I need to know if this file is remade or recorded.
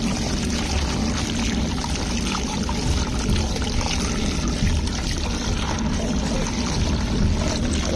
recorded